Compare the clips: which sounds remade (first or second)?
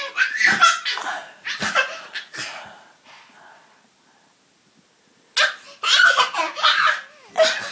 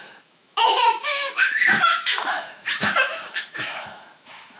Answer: second